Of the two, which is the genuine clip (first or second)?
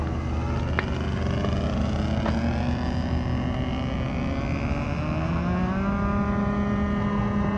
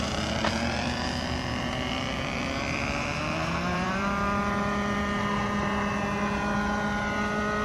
first